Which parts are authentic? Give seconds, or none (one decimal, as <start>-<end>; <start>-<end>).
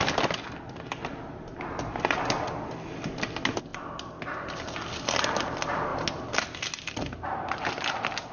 0.0-8.3